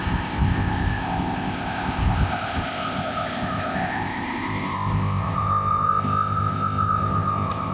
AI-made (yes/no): yes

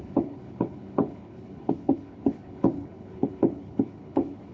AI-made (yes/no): yes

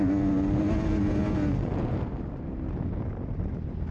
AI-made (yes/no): no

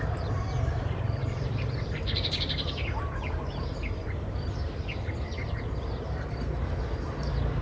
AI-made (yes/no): yes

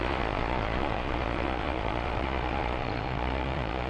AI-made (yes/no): yes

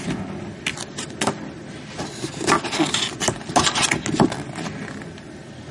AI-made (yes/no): no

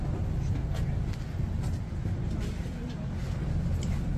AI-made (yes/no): no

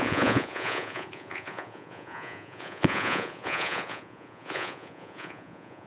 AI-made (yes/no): yes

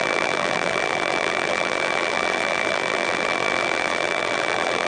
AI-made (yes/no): yes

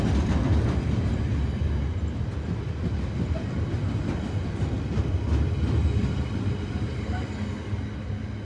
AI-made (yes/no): no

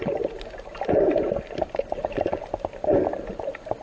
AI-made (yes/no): no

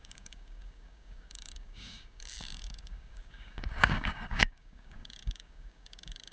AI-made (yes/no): yes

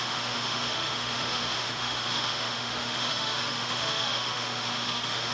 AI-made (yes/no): yes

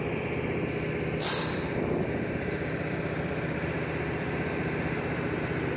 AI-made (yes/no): no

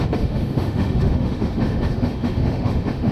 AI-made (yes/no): yes